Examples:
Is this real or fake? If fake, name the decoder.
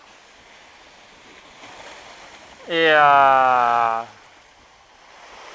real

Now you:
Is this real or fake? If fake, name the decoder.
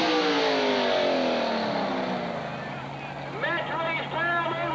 real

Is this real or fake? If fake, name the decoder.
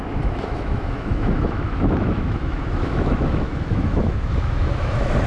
fake, autoencoder, DAC-VAE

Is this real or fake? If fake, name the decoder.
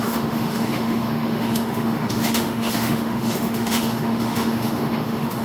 fake, autoencoder, DAC-VAE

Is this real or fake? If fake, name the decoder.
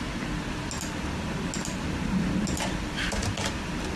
real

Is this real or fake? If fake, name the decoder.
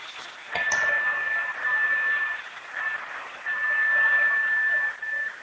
real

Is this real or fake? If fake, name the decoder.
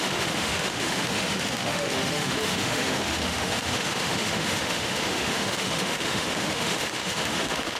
fake, autoencoder, DAC-VAE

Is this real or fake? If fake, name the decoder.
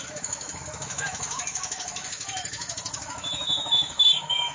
fake, autoencoder, DAC-VAE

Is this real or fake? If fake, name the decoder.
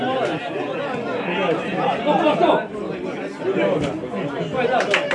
real